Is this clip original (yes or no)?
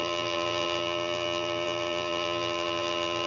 no